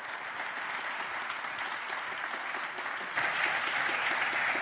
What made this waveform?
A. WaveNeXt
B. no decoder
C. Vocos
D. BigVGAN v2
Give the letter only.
B